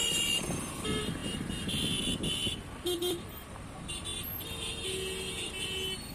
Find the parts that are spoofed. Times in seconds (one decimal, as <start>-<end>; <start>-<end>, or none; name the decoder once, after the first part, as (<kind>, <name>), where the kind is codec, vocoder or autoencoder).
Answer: 0.0-1.2 (vocoder, BigVGAN v2); 3.2-4.1